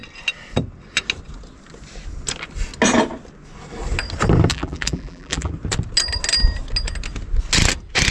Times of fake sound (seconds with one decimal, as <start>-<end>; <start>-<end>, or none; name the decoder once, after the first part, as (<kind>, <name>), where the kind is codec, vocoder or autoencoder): 4.5-5.5 (vocoder, BigVGAN v2)